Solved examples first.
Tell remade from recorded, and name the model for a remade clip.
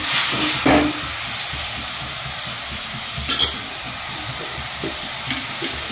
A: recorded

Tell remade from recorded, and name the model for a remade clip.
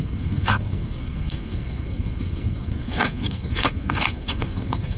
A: remade, codec, SNAC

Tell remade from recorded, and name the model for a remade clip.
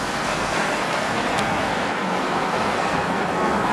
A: remade, codec, SNAC